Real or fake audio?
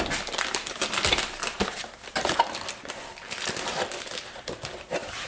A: real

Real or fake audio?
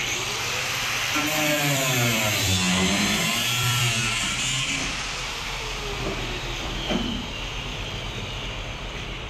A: fake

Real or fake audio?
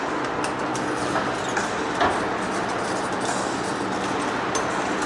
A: real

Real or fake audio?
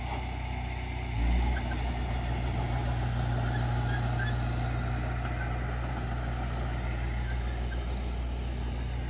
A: real